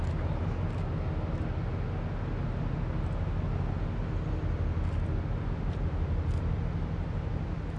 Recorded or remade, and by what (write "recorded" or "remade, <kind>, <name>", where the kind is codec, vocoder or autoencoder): recorded